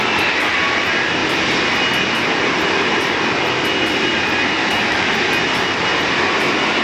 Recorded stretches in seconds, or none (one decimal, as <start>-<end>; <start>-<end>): 0.0-4.6; 5.1-6.8